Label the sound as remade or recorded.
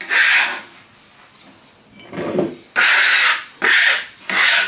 recorded